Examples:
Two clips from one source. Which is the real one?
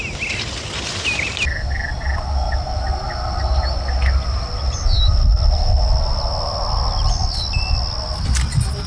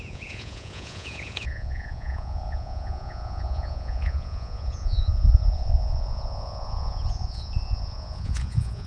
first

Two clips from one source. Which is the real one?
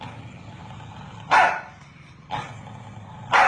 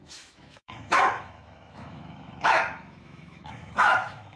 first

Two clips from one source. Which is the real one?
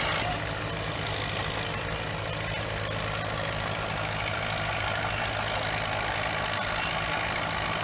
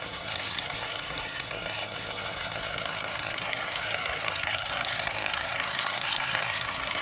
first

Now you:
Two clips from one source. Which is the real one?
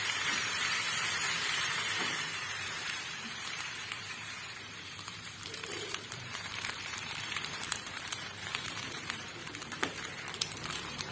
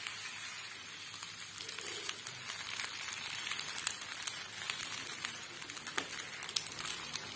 second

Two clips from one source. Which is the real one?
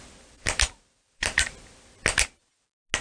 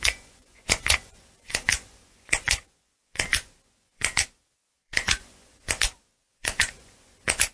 first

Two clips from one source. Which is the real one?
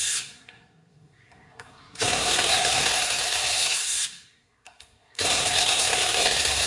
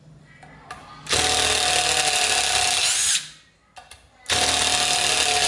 second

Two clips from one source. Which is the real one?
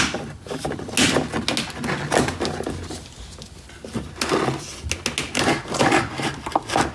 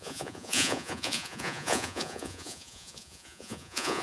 first